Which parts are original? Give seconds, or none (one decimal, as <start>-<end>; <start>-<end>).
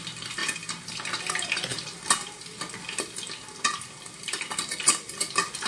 0.0-5.7